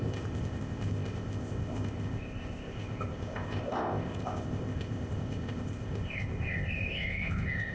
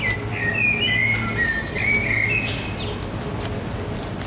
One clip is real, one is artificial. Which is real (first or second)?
second